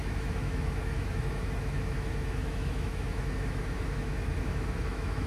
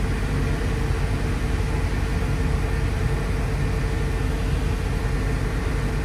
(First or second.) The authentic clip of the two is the second